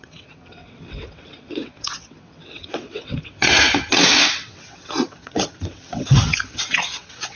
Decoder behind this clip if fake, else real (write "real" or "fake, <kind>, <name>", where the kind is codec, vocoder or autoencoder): fake, vocoder, WaveNeXt